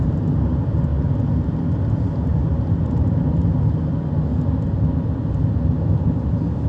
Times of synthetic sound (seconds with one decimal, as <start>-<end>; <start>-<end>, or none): 0.0-0.9; 1.9-2.3; 6.3-6.7